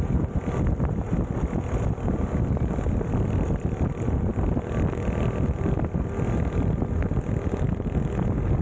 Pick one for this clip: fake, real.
real